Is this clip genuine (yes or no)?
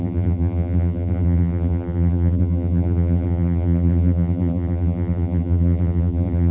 no